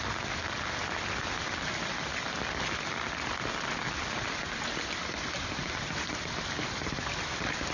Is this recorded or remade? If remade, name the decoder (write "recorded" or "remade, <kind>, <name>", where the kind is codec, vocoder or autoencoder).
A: recorded